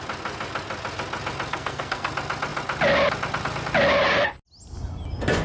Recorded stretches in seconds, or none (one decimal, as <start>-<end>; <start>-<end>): 0.0-1.5; 2.1-5.4